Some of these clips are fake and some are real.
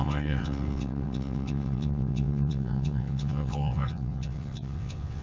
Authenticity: fake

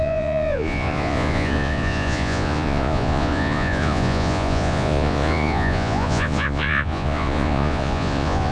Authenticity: fake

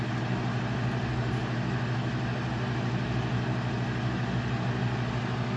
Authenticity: real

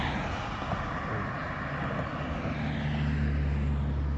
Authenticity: real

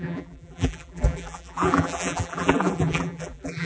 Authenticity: fake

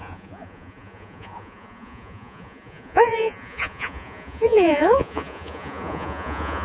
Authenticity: fake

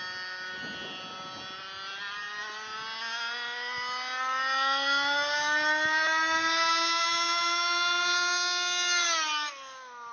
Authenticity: real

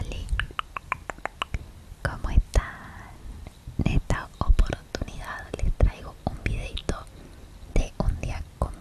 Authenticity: real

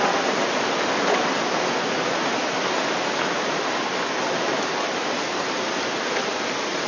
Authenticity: real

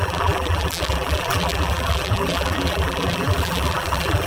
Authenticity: fake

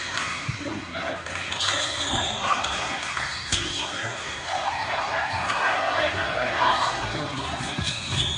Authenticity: fake